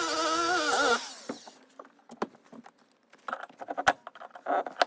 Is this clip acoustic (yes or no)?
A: yes